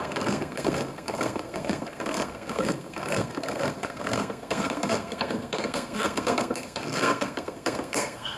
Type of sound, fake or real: fake